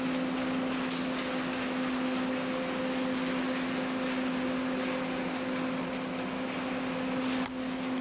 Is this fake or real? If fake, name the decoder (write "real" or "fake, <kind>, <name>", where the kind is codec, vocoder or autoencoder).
real